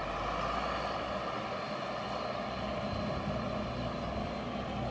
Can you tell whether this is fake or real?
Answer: real